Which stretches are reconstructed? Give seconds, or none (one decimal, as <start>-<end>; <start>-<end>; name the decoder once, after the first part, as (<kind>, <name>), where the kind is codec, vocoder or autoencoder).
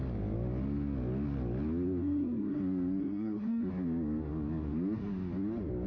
2.0-2.6 (codec, SNAC); 3.0-3.7